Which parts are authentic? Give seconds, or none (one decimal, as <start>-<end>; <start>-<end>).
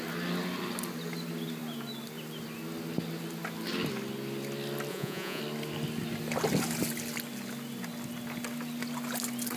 0.0-4.9; 5.4-9.6